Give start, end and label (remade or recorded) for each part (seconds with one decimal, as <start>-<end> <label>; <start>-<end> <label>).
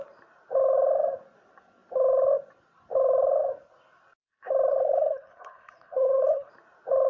0.0-4.7 recorded; 4.7-6.5 remade; 6.5-7.1 recorded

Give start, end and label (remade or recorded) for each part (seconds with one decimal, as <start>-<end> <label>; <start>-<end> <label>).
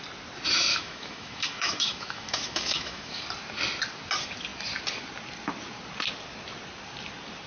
0.0-0.7 recorded; 0.7-3.2 remade; 3.2-7.5 recorded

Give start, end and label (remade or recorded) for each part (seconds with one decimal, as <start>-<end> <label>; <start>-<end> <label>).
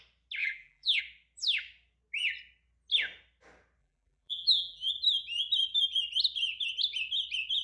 0.0-0.4 recorded; 0.4-1.0 remade; 1.0-3.8 recorded; 3.8-4.9 remade; 4.9-7.6 recorded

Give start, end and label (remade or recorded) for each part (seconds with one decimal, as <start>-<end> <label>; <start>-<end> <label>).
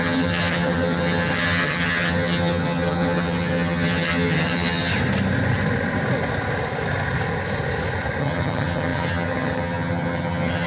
0.0-4.9 remade; 4.9-8.2 recorded; 8.2-10.7 remade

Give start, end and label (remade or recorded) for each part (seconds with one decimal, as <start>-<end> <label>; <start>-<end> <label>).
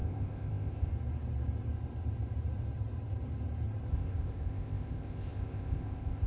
0.0-0.9 remade; 0.9-3.9 recorded; 3.9-6.3 remade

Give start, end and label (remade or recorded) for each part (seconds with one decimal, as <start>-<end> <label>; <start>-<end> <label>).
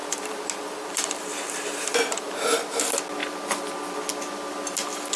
0.0-2.8 remade; 2.8-5.2 recorded